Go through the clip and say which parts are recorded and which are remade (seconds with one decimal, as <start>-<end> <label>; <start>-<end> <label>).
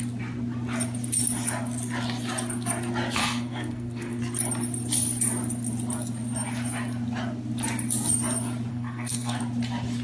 0.0-3.2 recorded; 3.2-4.2 remade; 4.2-8.7 recorded; 8.7-9.4 remade; 9.4-10.0 recorded